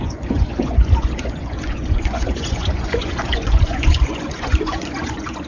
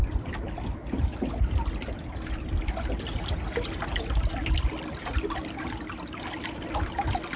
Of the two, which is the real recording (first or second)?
second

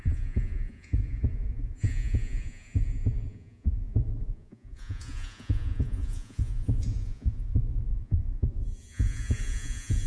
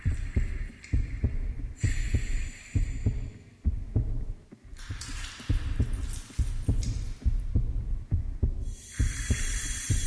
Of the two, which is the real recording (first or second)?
second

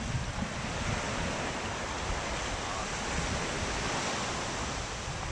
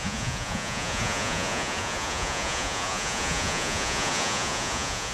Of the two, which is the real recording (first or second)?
first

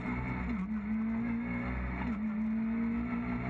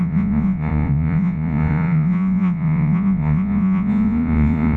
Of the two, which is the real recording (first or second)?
first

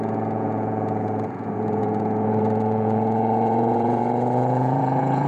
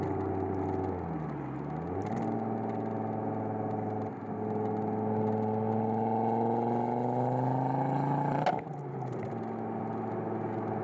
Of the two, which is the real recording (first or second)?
second